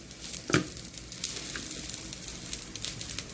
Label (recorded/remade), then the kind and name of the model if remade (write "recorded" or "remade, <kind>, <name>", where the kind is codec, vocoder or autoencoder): recorded